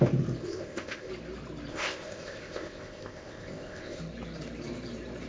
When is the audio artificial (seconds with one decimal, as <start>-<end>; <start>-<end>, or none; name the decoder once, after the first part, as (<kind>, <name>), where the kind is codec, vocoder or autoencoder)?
0.4-1.1 (codec, ZipCodec); 1.7-4.0

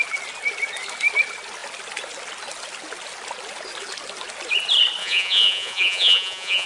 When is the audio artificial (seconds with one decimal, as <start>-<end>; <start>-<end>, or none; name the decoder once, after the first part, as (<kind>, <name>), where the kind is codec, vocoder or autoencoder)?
5.0-6.7 (vocoder, Vocos)

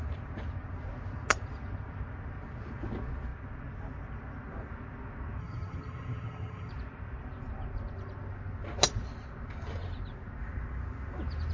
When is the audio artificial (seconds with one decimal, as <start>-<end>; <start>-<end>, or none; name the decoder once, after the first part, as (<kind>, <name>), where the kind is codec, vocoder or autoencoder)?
5.4-6.7 (vocoder, HiFi-GAN)

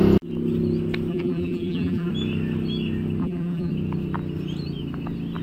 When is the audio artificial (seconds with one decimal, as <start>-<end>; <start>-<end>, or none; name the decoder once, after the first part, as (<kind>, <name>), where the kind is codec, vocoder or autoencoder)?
1.1-2.1 (vocoder, BigVGAN v2); 3.2-3.7

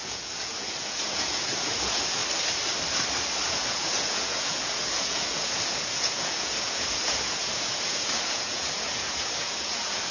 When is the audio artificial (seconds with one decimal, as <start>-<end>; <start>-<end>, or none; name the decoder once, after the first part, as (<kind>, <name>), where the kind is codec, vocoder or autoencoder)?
0.0-2.2 (vocoder, Vocos); 3.4-10.1